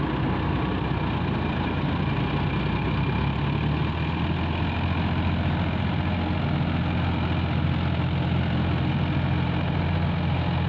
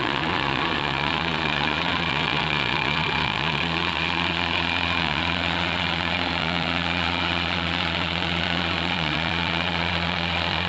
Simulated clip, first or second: second